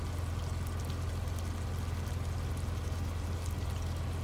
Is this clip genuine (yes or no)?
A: yes